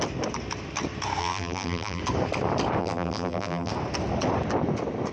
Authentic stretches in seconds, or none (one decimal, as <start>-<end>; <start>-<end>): 0.0-1.2; 2.0-2.8; 3.7-5.1